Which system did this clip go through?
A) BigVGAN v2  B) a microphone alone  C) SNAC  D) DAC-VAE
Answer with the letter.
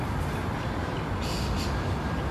B